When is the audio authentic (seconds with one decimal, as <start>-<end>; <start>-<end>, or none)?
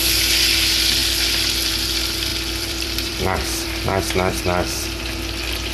0.0-2.3; 5.0-5.7